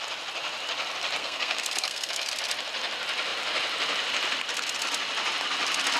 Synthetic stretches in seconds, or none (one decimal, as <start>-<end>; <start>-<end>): 1.2-2.3

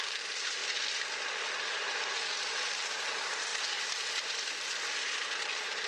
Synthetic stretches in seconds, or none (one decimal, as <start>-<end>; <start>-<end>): 0.0-0.6; 1.6-5.9

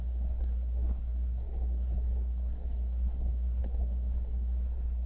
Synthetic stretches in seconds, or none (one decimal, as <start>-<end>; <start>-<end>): 0.0-5.1

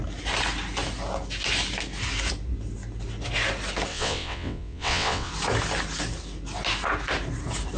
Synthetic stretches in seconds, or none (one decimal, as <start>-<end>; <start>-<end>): 3.9-5.3